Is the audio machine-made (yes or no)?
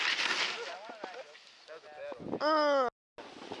no